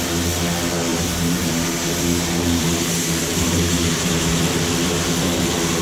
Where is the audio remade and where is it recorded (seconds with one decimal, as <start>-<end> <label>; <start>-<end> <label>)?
0.0-0.9 recorded; 0.9-4.4 remade; 4.4-5.8 recorded